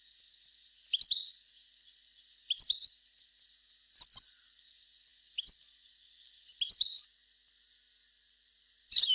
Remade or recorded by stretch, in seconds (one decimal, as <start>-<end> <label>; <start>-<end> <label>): 0.0-9.1 recorded